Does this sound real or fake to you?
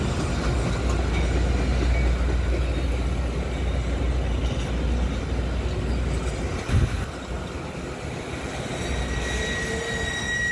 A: real